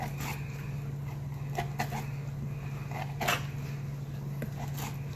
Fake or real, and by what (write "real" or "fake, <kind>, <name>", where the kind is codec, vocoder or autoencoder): real